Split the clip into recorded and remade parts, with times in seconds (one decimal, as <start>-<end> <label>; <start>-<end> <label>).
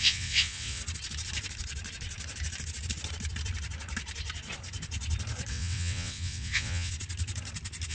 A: 0.0-0.8 remade; 0.8-5.5 recorded; 5.5-6.9 remade; 6.9-7.9 recorded